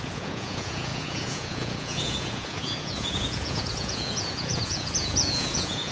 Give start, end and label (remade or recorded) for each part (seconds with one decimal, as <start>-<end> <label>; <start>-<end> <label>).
0.0-5.9 remade